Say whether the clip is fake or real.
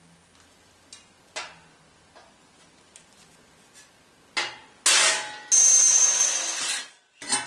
real